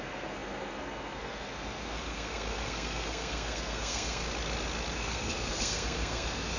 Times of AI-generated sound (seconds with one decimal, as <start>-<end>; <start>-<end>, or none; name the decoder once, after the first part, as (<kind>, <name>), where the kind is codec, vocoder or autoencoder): 0.0-4.2 (codec, SNAC); 4.9-6.6